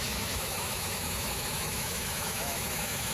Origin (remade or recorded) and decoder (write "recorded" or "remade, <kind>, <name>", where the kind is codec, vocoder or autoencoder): remade, autoencoder, DAC-VAE